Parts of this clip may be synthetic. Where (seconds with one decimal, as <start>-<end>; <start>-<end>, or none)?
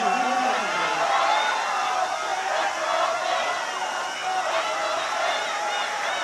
none